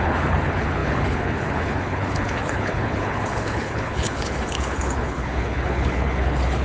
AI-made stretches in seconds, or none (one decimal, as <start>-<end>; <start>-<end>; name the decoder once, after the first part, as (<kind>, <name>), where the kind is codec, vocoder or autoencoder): 0.0-6.6 (codec, HILCodec)